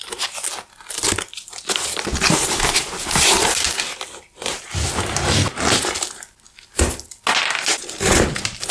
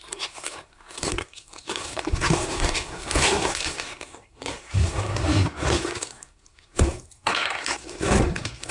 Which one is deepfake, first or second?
second